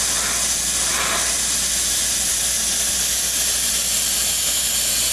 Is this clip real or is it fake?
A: real